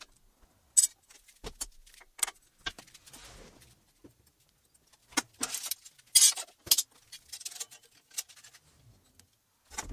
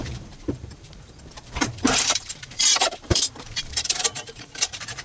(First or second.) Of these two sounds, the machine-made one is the second